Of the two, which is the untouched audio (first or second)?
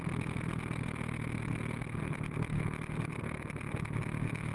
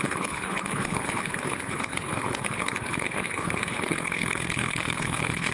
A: first